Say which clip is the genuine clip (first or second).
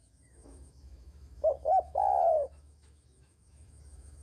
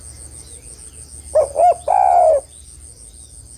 second